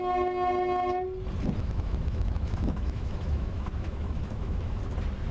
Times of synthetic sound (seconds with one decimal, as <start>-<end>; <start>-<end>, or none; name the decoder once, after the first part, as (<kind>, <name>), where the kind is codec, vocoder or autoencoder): 1.6-4.8 (autoencoder, DAC-VAE)